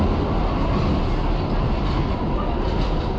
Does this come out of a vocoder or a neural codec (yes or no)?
no